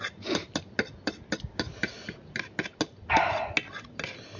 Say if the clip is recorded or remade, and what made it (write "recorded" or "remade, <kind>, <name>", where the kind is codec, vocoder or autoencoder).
recorded